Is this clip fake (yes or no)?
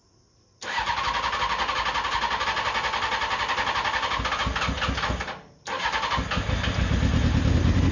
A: no